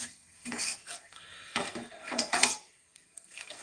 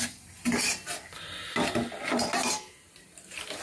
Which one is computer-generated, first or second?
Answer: first